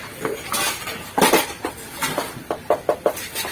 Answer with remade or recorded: recorded